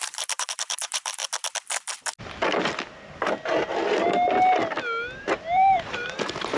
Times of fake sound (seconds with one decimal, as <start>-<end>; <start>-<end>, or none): 0.0-1.2; 5.2-6.6